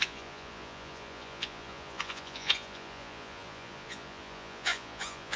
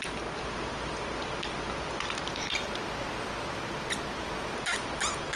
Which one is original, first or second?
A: second